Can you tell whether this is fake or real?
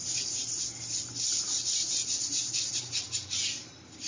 real